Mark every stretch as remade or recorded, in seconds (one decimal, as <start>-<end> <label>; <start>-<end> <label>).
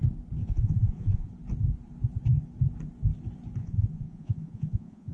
0.0-0.4 recorded; 0.4-1.3 remade; 1.3-3.6 recorded; 3.6-5.1 remade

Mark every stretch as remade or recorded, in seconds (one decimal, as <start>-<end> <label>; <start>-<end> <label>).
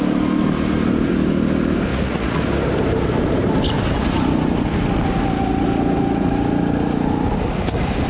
0.0-1.9 recorded; 1.9-2.4 remade; 2.4-8.1 recorded